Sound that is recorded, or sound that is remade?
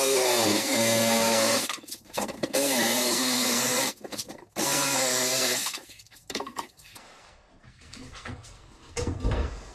remade